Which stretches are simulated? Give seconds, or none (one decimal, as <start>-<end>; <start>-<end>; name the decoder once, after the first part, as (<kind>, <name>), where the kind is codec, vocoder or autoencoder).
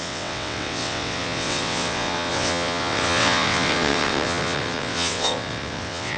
0.0-6.2 (vocoder, WaveNeXt)